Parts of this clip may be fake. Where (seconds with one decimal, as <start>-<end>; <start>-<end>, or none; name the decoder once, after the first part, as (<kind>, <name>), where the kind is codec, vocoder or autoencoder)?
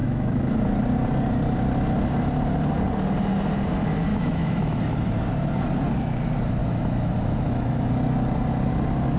0.0-0.5 (autoencoder, DAC-VAE); 4.1-4.8; 6.6-7.9